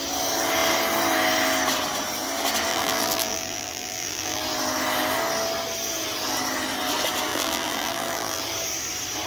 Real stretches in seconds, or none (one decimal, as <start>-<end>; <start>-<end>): 0.0-2.7; 4.4-7.3; 8.4-9.3